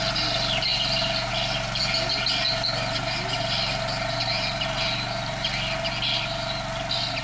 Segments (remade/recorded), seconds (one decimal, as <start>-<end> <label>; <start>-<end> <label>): 0.0-7.2 recorded